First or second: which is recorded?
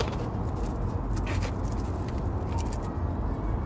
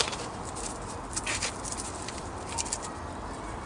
first